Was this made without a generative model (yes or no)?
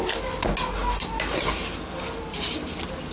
yes